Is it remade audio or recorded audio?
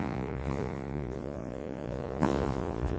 remade